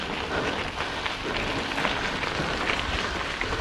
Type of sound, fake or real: real